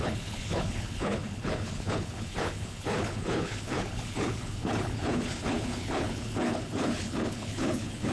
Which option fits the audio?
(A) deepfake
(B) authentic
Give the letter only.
A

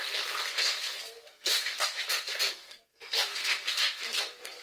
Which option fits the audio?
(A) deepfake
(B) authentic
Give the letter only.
A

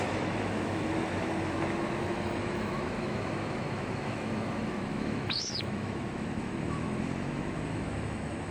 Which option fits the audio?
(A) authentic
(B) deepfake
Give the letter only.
B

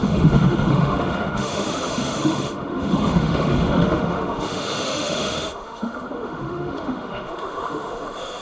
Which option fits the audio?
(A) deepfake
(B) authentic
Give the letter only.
A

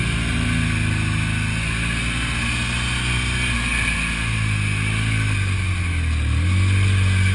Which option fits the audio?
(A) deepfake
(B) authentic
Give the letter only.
B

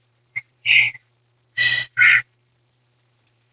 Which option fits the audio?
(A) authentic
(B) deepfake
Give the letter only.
B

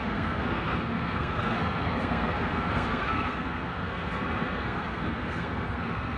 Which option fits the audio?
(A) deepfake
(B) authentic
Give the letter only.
A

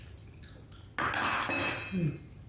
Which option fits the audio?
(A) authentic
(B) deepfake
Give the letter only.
A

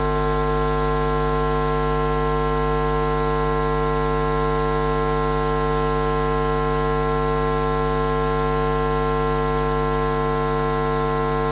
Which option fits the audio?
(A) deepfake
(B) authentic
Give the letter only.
B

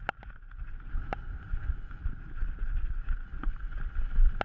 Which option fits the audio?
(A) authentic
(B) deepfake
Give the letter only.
A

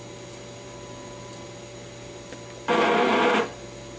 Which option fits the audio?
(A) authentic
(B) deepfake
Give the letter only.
A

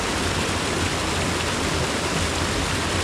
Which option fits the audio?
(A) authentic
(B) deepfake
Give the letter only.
A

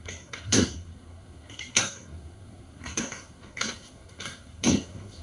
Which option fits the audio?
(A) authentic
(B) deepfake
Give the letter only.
B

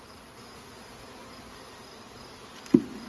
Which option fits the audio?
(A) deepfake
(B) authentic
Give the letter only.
B